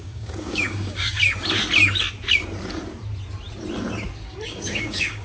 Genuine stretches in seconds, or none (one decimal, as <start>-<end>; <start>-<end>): 1.2-4.3